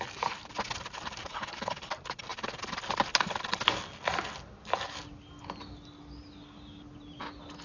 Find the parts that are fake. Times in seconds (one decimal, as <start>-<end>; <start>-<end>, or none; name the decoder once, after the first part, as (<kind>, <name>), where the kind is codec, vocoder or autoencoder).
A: 1.3-1.9 (codec, HILCodec)